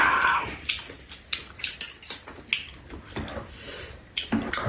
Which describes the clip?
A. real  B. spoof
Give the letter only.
A